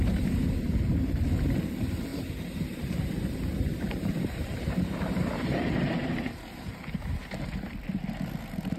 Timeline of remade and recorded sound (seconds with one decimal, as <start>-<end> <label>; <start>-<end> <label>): 0.0-2.1 recorded; 2.1-6.7 remade; 6.7-8.8 recorded